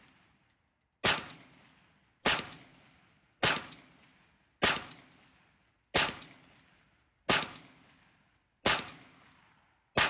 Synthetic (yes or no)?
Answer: no